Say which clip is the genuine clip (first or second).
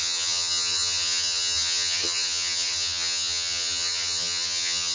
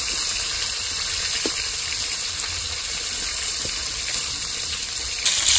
second